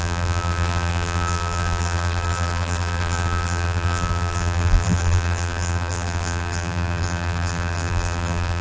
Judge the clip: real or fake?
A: fake